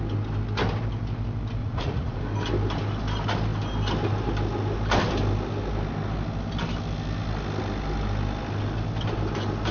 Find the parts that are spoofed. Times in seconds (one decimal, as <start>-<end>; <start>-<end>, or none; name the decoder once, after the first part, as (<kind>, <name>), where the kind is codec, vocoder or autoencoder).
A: 1.6-2.2 (vocoder, Vocos)